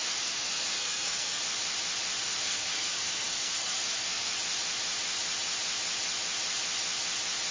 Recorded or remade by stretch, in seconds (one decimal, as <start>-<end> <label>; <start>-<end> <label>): 0.0-1.4 remade; 1.4-2.2 recorded; 2.2-4.3 remade; 4.3-7.5 recorded